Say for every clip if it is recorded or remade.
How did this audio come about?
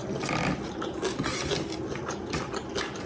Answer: recorded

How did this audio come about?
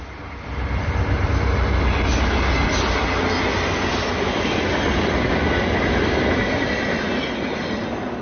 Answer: recorded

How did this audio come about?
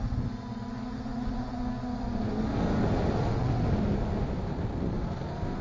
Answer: recorded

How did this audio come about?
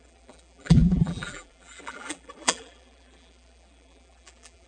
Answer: remade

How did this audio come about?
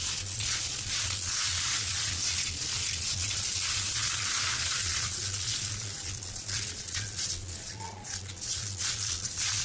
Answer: remade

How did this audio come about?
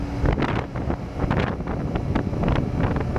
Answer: recorded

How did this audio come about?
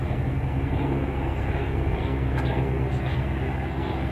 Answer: remade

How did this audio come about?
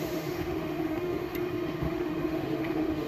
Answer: remade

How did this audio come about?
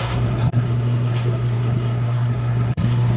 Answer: remade